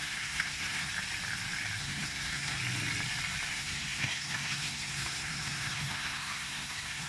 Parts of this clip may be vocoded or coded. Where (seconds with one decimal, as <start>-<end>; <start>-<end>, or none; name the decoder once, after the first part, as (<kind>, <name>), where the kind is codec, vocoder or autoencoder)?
0.0-0.9 (codec, SNAC); 1.8-2.6; 3.5-7.1